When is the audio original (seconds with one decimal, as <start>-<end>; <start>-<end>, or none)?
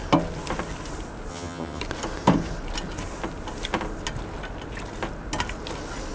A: 0.0-1.3; 1.8-6.1